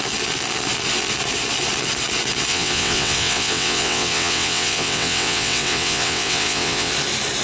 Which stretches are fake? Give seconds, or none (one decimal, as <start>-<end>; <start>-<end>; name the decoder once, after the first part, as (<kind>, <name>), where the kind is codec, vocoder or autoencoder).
2.5-6.9 (vocoder, WaveNeXt)